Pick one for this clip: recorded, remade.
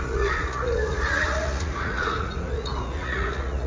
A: remade